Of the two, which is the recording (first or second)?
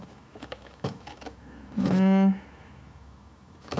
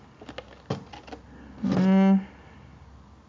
second